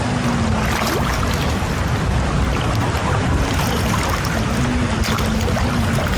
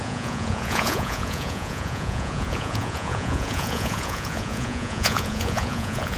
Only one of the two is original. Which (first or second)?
first